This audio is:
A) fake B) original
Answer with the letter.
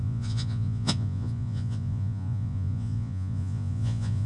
A